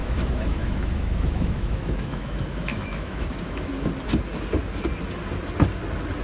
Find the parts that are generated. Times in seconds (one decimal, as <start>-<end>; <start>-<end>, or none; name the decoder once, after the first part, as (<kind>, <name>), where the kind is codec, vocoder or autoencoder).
0.0-3.7 (autoencoder, DAC-VAE)